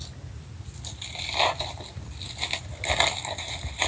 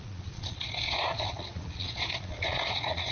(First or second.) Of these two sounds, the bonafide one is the first